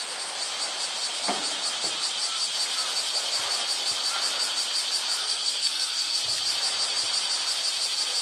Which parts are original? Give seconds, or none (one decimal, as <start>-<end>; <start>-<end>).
0.0-5.2; 6.2-8.2